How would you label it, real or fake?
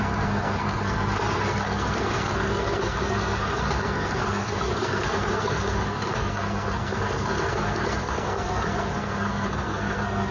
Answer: fake